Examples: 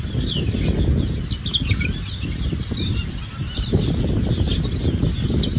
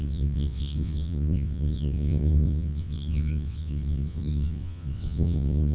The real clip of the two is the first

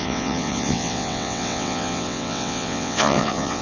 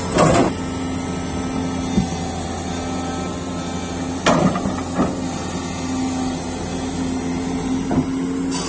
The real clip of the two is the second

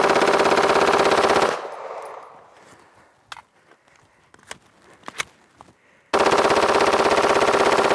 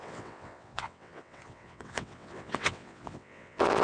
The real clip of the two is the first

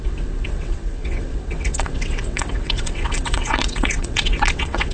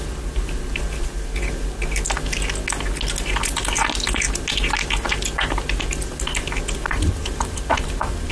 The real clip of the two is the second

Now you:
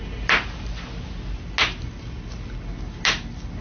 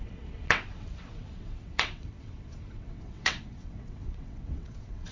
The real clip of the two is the first